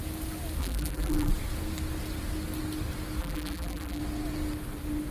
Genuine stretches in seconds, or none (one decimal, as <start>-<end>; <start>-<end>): 0.0-0.6; 1.3-3.2; 4.0-5.1